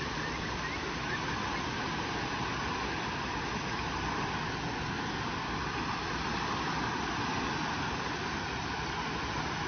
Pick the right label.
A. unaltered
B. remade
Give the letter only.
A